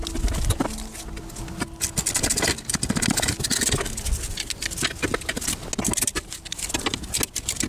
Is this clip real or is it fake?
real